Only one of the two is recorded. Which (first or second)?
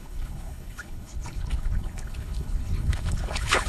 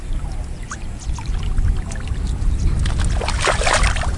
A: second